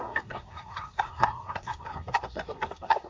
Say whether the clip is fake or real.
fake